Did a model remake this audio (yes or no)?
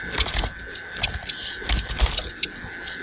no